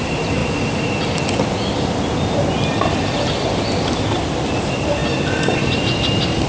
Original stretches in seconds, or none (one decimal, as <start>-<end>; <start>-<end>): 0.0-6.5